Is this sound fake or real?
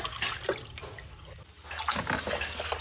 real